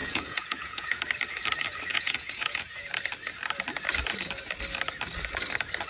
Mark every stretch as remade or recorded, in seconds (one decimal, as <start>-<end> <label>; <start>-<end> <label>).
0.0-1.0 remade; 1.0-1.9 recorded; 1.9-2.9 remade; 2.9-5.9 recorded